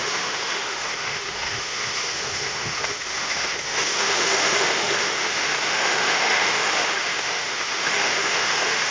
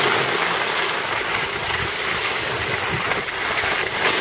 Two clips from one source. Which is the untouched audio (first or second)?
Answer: second